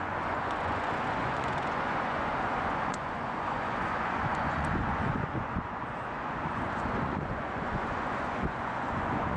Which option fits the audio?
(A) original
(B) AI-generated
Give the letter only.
B